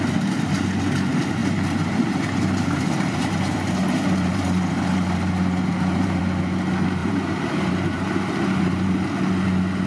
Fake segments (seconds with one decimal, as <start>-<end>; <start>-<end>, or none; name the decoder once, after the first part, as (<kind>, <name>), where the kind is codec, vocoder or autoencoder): 1.4-6.2 (vocoder, BigVGAN v2); 7.0-8.9